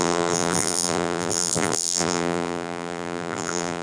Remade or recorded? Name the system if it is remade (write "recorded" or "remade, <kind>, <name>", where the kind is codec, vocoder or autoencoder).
remade, vocoder, BigVGAN v2